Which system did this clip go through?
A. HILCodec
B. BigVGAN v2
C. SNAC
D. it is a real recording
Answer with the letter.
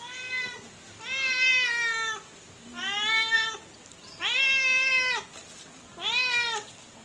D